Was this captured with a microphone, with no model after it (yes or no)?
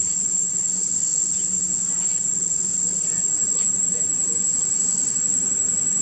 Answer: yes